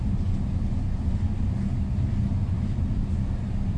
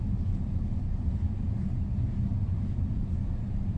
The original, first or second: first